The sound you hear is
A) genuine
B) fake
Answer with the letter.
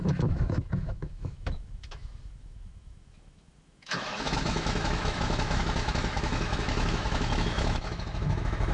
B